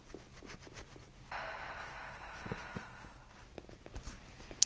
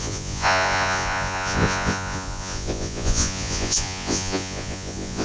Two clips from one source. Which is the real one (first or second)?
first